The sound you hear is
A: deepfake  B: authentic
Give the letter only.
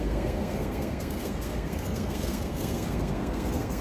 A